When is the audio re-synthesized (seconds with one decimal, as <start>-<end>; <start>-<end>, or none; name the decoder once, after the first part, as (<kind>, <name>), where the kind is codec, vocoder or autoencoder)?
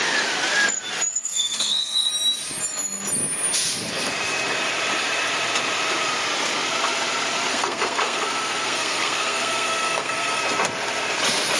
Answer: 1.1-2.1 (codec, SNAC); 7.5-10.4